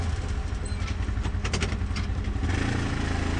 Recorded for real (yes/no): yes